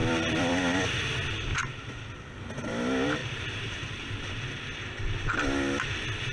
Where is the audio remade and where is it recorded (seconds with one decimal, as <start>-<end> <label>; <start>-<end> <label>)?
0.0-1.1 remade; 1.1-3.2 recorded; 3.2-4.2 remade; 4.2-6.3 recorded